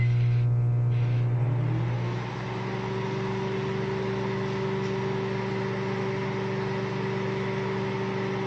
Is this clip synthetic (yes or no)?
no